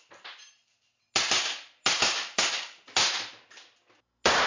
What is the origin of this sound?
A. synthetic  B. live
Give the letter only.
B